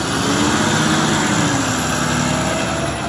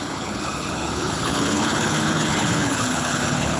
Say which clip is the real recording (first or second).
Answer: first